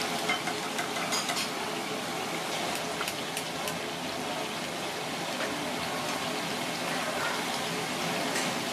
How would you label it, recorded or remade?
recorded